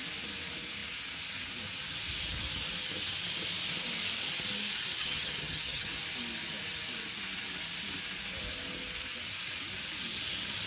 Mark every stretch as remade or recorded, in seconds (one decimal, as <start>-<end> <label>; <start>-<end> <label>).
0.0-5.0 recorded; 5.0-5.9 remade; 5.9-10.7 recorded